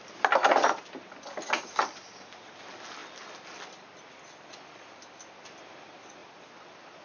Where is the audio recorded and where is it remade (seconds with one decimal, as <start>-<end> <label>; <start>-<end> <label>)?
0.0-7.0 recorded